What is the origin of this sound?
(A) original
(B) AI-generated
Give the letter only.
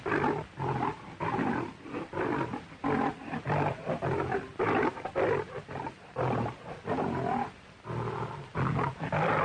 A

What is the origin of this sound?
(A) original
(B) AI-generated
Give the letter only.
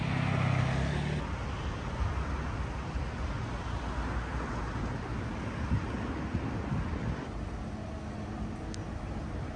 A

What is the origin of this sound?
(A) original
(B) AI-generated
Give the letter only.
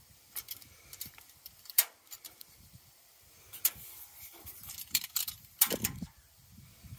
B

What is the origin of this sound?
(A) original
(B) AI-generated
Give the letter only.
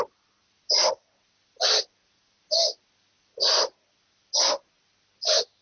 A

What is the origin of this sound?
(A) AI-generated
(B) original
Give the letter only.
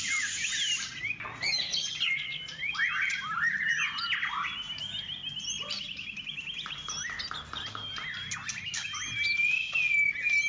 B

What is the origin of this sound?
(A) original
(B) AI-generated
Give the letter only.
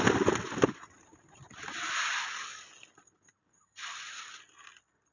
A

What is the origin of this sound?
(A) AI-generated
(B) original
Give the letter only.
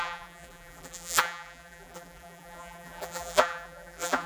A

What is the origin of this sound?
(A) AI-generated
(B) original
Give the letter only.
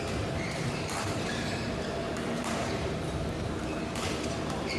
A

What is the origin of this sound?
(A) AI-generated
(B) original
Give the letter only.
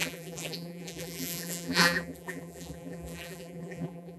A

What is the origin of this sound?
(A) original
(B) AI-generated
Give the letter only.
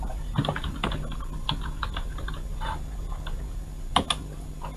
A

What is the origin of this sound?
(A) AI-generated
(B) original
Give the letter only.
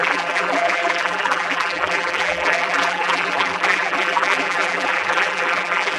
A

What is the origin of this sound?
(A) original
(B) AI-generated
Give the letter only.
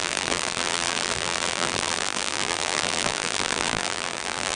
B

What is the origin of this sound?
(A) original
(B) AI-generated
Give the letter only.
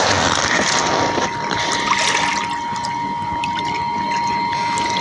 A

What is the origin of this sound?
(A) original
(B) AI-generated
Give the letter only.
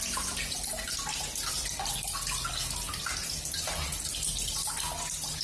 A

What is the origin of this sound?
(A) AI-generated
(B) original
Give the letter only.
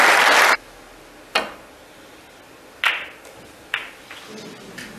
B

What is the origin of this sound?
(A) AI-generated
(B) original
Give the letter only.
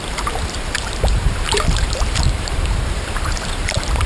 A